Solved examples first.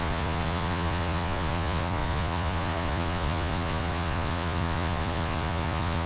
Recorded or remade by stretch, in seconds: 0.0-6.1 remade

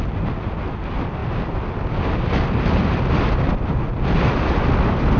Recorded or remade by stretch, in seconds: 0.0-5.2 recorded

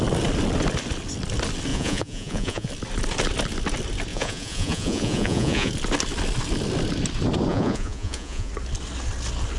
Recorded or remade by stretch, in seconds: 0.0-1.7 recorded; 1.7-2.7 remade; 2.7-4.1 recorded; 4.1-5.7 remade; 5.7-7.5 recorded; 7.5-8.5 remade; 8.5-9.6 recorded